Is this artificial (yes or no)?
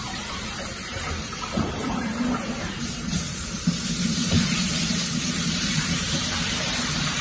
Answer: yes